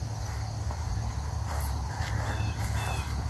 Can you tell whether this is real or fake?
real